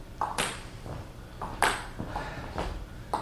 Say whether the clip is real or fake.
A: fake